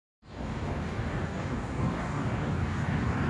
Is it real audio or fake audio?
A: fake